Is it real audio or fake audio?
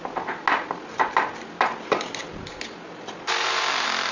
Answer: real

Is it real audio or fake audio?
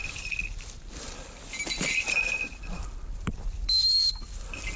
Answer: real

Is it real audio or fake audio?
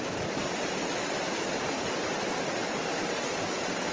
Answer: real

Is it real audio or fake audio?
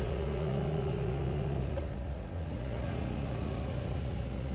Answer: fake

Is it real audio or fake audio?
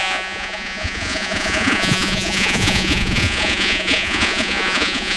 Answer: fake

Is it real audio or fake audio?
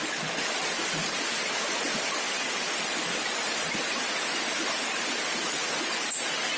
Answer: real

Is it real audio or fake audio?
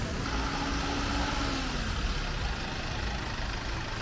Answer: real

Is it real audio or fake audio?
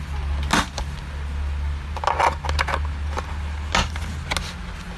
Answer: real